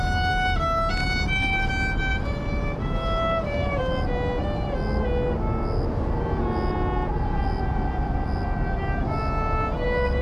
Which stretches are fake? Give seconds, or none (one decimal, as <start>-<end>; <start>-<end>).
1.0-1.7; 2.1-3.8